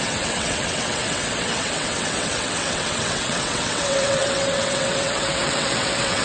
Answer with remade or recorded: remade